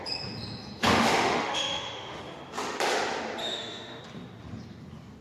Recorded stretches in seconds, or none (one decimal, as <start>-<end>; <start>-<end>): 0.0-0.9; 2.2-3.4; 4.0-5.2